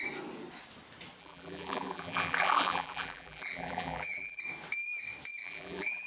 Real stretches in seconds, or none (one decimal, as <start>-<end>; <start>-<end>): 0.0-1.2; 4.4-5.4